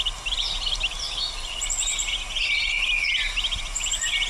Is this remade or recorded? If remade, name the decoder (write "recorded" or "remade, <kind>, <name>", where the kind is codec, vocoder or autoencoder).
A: recorded